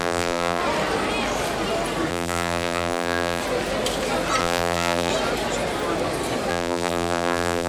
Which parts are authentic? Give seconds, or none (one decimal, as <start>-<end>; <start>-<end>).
0.6-2.1; 3.4-4.4; 5.1-6.5